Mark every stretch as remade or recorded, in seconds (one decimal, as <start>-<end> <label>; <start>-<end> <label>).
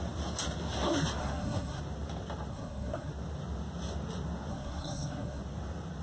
0.0-1.2 recorded; 1.2-1.8 remade; 1.8-2.5 recorded; 2.5-3.1 remade; 3.1-4.5 recorded; 4.5-5.4 remade; 5.4-6.0 recorded